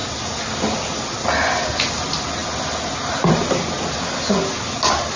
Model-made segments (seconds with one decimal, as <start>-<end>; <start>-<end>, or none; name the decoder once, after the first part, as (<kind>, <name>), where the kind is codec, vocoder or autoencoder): none